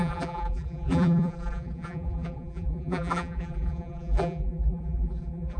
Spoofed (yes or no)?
yes